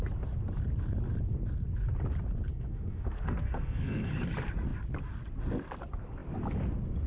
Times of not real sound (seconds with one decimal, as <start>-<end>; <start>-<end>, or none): 2.5-4.1